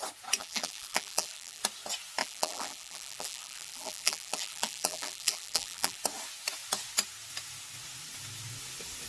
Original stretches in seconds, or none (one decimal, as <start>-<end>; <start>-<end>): 0.0-0.4; 1.6-2.2; 6.0-9.1